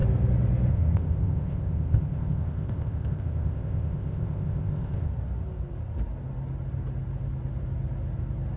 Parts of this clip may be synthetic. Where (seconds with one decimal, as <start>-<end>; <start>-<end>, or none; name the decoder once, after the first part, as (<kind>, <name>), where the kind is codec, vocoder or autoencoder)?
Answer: 0.7-5.1 (codec, ZipCodec)